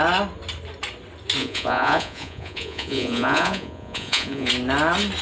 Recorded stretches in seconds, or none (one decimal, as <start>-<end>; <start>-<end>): 0.0-1.4; 4.5-5.2